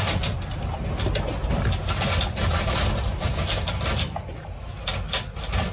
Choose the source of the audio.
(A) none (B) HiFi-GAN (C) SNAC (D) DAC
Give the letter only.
A